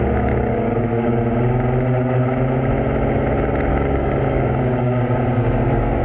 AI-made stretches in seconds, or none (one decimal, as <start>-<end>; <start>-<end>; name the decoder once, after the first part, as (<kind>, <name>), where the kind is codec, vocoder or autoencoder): 0.5-1.2 (codec, DAC); 3.7-6.0